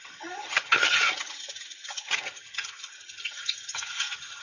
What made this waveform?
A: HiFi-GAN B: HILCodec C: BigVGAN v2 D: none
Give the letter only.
A